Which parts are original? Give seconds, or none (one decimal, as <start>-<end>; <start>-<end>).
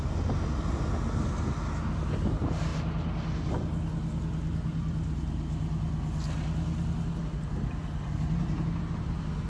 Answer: 0.0-9.5